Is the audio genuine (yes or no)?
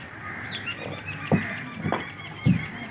no